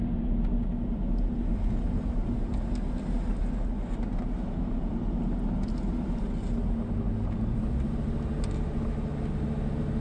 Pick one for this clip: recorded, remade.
recorded